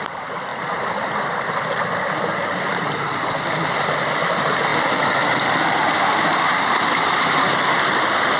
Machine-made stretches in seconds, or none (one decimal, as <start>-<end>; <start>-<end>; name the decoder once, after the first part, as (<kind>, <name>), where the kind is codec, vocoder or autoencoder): none